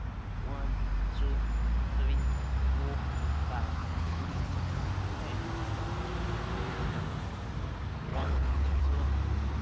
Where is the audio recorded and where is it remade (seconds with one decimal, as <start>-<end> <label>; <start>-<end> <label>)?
0.0-3.8 recorded; 3.8-4.9 remade; 4.9-8.1 recorded; 8.1-8.8 remade; 8.8-9.6 recorded